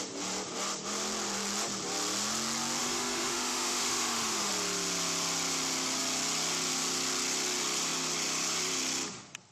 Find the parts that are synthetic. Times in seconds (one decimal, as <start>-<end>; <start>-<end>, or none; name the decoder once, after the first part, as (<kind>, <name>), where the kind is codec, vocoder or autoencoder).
2.8-4.5 (autoencoder, DAC-VAE)